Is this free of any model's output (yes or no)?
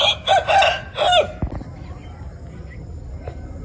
yes